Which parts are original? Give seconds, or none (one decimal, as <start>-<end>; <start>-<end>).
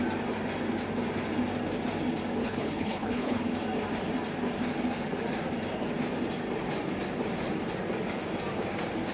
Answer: 0.0-2.4; 3.4-9.1